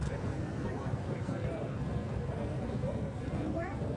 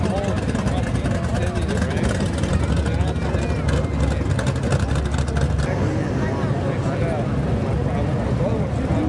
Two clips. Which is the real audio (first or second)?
second